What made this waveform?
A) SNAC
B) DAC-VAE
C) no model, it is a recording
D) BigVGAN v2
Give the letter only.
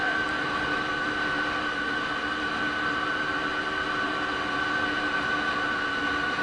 C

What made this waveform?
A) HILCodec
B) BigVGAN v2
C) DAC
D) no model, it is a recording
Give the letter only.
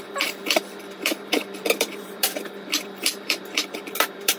B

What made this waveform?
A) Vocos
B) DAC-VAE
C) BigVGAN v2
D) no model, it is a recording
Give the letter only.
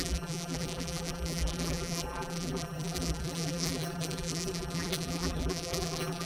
C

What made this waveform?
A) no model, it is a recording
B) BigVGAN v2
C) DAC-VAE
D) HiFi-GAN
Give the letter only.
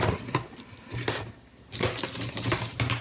A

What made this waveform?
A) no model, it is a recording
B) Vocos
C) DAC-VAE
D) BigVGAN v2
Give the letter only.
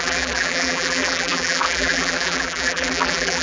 D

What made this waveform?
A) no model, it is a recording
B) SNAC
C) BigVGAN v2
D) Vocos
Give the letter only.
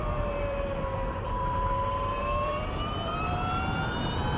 C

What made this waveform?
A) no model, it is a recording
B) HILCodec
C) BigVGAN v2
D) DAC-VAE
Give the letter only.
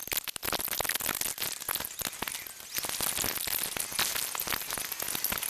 A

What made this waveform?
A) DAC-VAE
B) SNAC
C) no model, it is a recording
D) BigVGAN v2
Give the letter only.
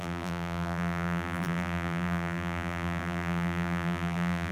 D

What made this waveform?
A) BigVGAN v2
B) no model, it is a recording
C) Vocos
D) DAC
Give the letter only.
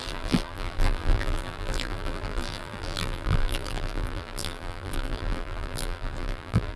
A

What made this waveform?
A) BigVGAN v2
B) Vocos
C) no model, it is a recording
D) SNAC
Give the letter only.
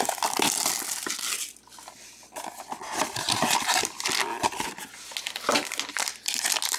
C